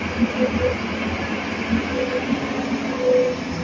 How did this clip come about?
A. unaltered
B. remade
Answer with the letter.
A